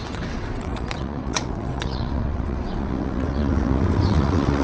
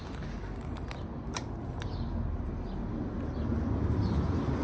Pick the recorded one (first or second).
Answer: second